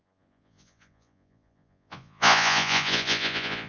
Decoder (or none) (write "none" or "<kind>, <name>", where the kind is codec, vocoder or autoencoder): vocoder, Vocos